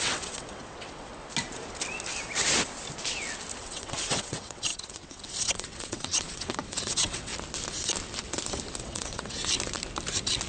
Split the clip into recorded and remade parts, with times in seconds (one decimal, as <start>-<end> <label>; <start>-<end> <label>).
0.0-1.1 remade; 1.1-3.6 recorded; 3.6-7.3 remade; 7.3-8.8 recorded; 8.8-9.4 remade; 9.4-10.5 recorded